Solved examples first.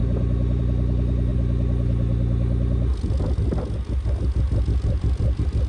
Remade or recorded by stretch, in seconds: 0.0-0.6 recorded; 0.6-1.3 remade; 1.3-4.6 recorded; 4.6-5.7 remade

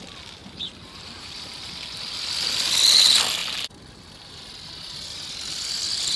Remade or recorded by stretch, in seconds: 0.0-0.4 recorded; 0.4-1.3 remade; 1.3-6.2 recorded